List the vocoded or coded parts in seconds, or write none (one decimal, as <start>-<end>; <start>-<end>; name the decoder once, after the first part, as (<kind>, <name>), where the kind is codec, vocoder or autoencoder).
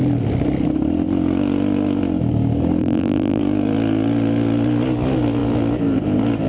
2.8-3.4 (vocoder, BigVGAN v2)